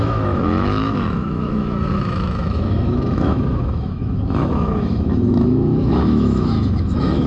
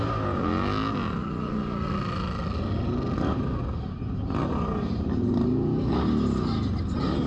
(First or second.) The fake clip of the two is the first